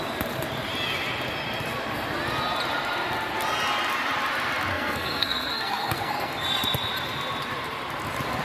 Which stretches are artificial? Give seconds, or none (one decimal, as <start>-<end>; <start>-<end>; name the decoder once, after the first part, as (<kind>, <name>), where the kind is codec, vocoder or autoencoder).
4.7-6.3 (codec, SNAC)